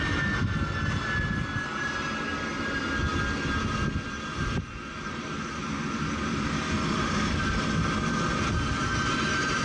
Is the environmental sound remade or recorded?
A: recorded